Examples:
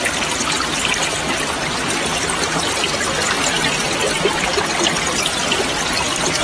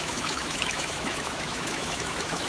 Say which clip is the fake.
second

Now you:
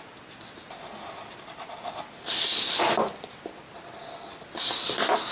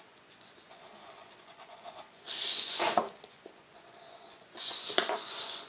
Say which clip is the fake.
second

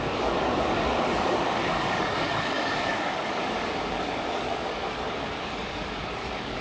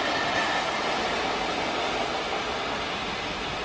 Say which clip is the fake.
first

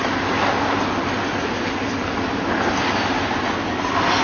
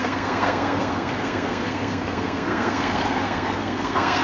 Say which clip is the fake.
second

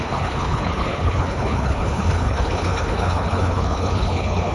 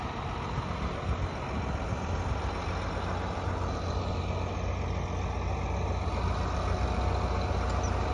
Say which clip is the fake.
first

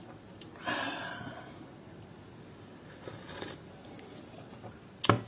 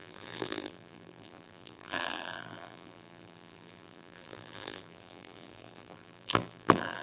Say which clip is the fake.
second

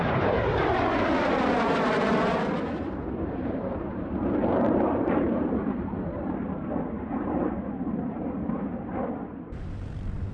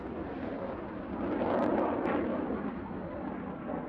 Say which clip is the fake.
first